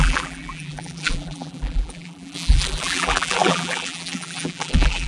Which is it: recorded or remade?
remade